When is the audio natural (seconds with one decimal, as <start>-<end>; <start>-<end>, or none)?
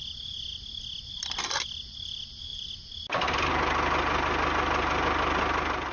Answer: 0.0-5.9